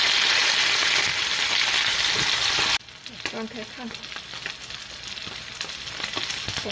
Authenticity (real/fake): real